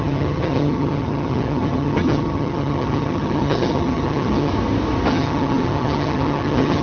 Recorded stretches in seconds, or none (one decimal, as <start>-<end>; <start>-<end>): 4.5-5.1